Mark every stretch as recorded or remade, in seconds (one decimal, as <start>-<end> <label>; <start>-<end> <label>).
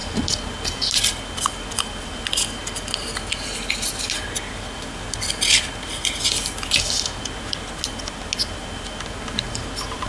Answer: 0.0-10.1 recorded